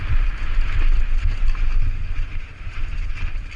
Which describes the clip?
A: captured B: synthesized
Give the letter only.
A